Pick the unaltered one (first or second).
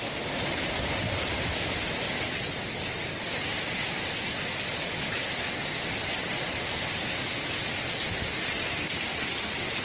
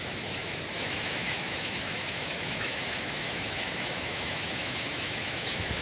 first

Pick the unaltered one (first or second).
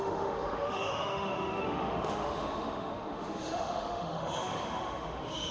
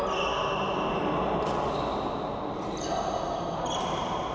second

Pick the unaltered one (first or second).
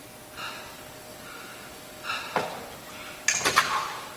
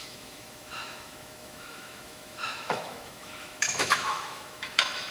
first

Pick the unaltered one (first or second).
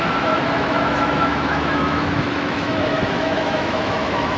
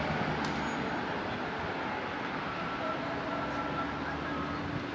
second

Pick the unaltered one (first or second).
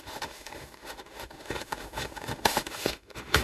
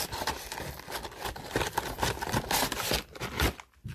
second